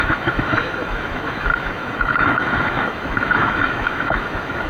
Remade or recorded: remade